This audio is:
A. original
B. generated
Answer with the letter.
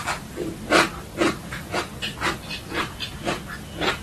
A